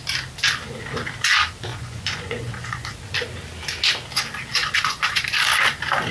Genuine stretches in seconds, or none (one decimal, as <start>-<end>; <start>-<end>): 0.0-1.7; 2.9-4.6; 5.2-6.1